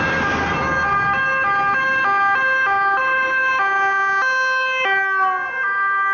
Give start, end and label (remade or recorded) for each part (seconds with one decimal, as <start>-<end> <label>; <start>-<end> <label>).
0.0-6.1 recorded